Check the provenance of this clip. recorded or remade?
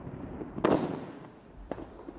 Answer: recorded